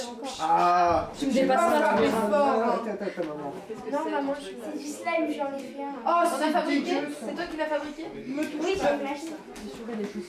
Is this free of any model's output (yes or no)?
yes